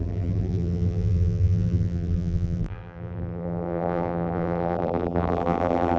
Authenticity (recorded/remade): remade